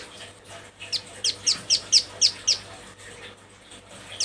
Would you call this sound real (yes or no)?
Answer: yes